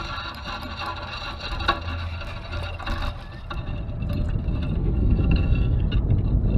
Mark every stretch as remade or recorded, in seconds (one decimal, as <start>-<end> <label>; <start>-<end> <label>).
0.0-4.8 recorded; 4.8-5.8 remade; 5.8-6.6 recorded